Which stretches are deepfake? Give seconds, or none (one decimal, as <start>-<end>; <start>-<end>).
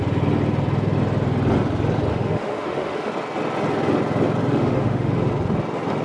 2.1-3.1; 4.5-5.1